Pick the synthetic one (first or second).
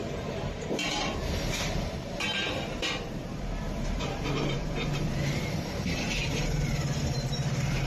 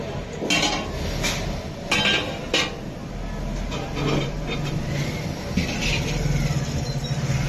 first